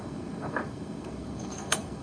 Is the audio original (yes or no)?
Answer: no